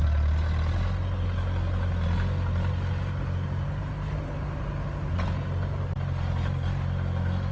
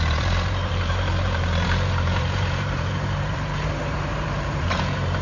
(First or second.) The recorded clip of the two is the first